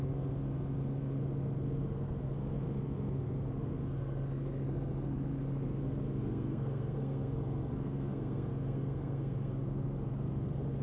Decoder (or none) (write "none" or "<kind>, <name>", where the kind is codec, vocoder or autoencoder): codec, SNAC